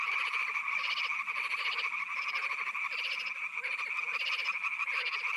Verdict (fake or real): fake